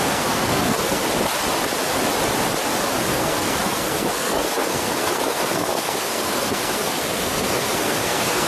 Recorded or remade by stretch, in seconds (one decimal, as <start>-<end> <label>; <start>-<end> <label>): 0.0-1.0 remade; 1.0-3.1 recorded; 3.1-8.5 remade